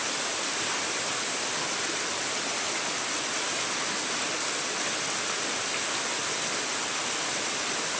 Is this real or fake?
real